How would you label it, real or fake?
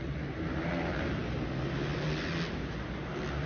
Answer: real